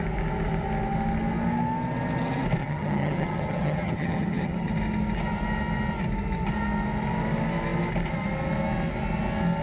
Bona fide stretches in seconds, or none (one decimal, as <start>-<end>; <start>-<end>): 0.0-2.6; 4.7-9.6